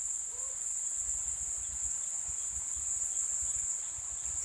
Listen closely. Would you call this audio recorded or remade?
recorded